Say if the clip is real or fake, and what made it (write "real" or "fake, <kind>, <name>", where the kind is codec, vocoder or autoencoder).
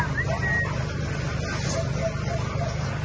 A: real